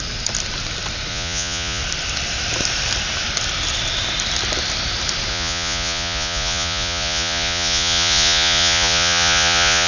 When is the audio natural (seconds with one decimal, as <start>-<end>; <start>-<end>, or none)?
0.0-1.1; 1.8-5.3